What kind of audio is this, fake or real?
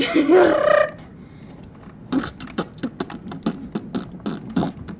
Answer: real